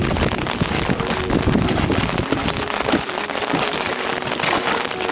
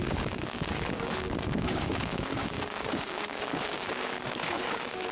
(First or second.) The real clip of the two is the first